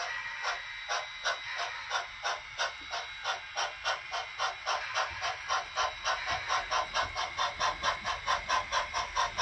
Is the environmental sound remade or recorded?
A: recorded